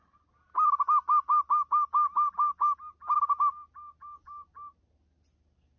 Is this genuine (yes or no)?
yes